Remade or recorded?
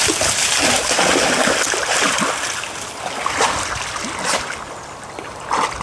recorded